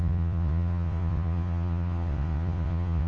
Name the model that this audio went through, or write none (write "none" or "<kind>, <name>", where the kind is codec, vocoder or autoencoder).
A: vocoder, Vocos